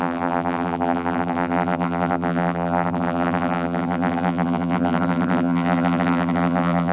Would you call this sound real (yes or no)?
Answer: no